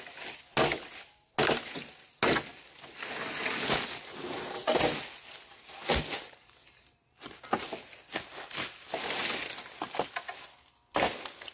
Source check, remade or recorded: recorded